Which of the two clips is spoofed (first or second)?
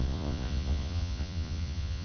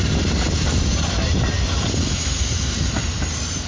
first